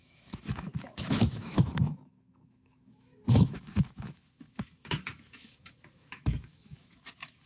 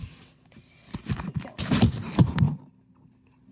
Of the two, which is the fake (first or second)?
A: first